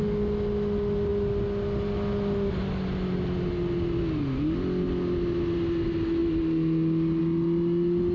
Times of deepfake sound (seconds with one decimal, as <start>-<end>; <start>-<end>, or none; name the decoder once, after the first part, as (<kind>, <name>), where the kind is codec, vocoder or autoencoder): none

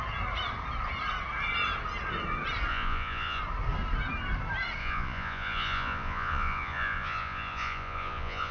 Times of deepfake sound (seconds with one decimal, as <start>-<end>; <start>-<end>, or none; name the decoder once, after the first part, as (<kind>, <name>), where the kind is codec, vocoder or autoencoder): 2.7-3.4 (vocoder, Vocos); 4.8-8.5

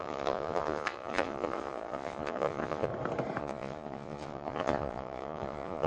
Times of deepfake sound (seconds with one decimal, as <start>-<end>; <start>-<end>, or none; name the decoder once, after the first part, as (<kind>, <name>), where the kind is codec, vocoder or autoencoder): 0.0-2.9 (vocoder, Vocos); 3.4-5.9

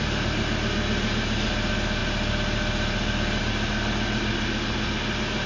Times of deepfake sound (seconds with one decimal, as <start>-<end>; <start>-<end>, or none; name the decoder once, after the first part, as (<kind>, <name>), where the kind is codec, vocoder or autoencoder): none